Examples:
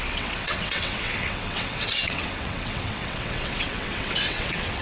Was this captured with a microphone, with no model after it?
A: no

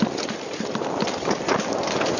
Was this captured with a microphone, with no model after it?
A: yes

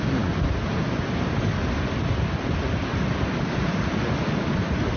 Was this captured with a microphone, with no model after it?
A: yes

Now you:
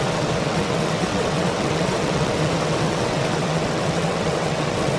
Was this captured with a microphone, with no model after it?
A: no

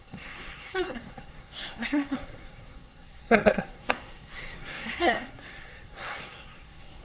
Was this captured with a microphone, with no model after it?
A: no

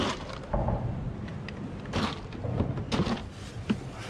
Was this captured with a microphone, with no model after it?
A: yes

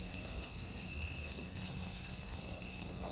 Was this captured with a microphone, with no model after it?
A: no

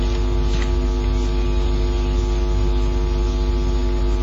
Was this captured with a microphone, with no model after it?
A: yes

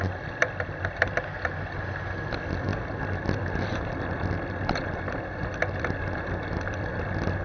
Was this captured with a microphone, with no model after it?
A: yes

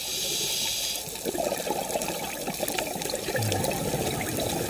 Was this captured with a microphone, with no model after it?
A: yes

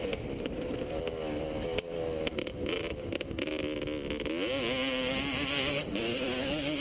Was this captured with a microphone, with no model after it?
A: yes